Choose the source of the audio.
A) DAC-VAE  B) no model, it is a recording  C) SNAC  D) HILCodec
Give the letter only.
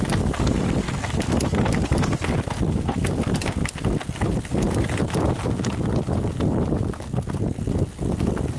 B